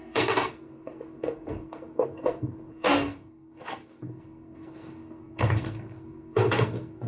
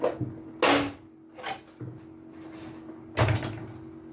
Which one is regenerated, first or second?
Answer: first